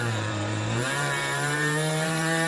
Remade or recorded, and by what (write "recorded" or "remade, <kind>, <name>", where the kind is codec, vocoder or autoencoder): remade, vocoder, BigVGAN v2